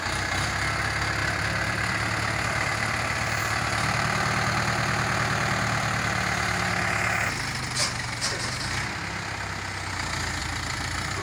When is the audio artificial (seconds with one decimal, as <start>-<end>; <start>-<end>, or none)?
1.2-3.4; 10.4-11.2